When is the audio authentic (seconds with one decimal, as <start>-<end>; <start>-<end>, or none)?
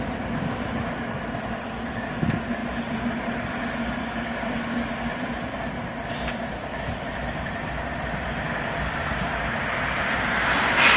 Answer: 0.0-11.0